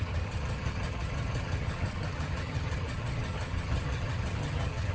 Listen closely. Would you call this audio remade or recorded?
remade